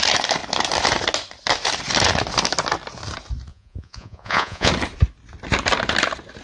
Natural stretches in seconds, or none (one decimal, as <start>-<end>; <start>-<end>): 0.0-3.5; 4.7-6.4